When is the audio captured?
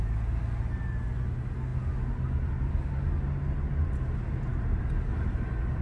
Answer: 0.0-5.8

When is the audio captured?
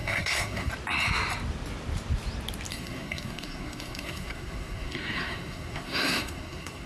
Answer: 0.7-2.7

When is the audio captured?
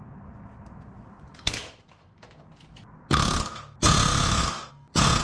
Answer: 0.0-1.3; 2.4-4.1; 4.7-5.2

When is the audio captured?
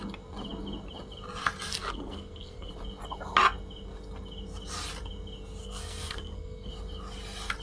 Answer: 0.0-1.7; 2.7-5.6; 6.7-7.6